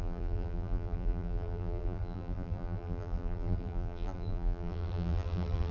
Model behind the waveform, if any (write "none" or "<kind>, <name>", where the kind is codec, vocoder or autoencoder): vocoder, BigVGAN v2